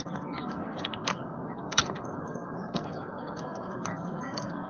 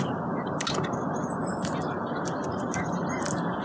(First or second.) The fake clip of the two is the first